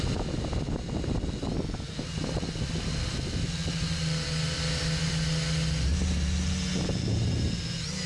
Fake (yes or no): no